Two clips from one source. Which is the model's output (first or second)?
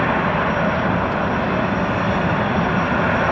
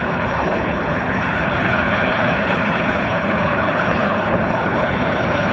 second